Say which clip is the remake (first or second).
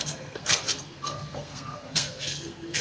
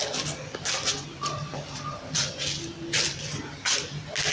first